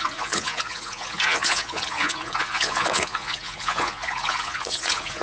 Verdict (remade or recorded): remade